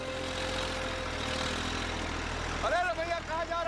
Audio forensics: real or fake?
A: real